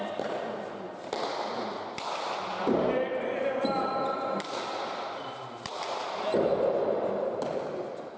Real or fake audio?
real